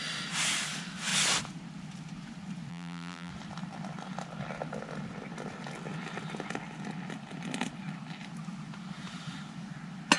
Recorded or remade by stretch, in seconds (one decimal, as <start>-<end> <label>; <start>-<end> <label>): 0.0-2.7 recorded; 2.7-3.3 remade; 3.3-10.2 recorded